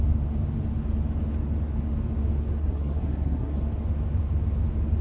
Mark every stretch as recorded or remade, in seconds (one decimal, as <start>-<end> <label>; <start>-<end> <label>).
0.0-2.6 recorded; 2.6-3.6 remade; 3.6-5.0 recorded